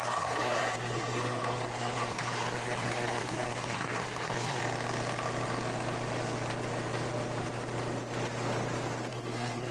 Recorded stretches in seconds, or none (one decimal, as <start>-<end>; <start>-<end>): 4.6-9.1